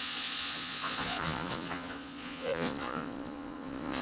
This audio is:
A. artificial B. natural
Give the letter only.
A